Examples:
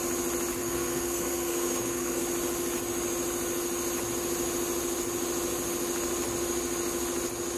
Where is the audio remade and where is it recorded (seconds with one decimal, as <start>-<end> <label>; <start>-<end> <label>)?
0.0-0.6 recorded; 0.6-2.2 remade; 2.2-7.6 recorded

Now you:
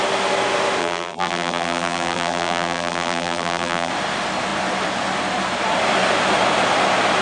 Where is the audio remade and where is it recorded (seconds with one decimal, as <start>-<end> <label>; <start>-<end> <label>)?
0.0-0.8 recorded; 0.8-3.9 remade; 3.9-7.2 recorded

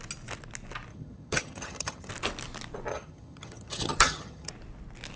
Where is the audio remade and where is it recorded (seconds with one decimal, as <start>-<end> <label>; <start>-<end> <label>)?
0.0-0.9 recorded; 0.9-2.1 remade; 2.1-2.9 recorded; 2.9-4.5 remade; 4.5-5.2 recorded

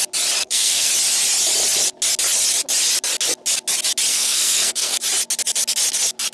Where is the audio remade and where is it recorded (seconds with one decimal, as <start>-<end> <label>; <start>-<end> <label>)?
0.0-0.4 recorded; 0.4-0.9 remade; 0.9-4.1 recorded; 4.1-5.0 remade; 5.0-6.3 recorded

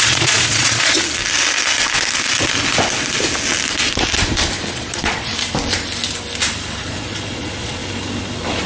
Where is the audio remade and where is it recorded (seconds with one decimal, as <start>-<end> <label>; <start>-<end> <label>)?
0.0-1.0 remade; 1.0-4.7 recorded; 4.7-5.3 remade; 5.3-6.8 recorded; 6.8-7.8 remade; 7.8-8.7 recorded

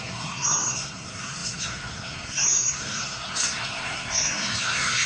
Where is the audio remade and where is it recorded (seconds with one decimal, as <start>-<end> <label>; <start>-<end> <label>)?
0.0-5.1 remade

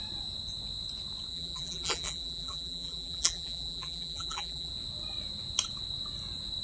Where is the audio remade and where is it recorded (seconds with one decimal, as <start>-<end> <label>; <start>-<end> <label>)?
0.0-1.3 recorded; 1.3-4.7 remade; 4.7-6.6 recorded

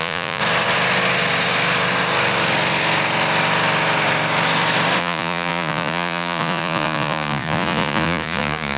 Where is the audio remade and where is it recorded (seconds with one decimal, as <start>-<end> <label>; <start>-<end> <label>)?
0.0-0.4 remade; 0.4-5.0 recorded; 5.0-8.8 remade